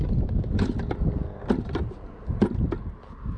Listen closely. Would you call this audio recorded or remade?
recorded